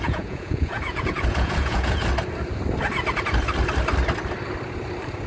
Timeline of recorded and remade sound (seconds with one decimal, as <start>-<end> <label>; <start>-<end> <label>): 0.0-2.0 remade; 2.0-5.3 recorded